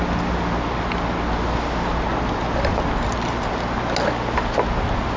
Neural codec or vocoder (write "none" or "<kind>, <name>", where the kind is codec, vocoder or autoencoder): none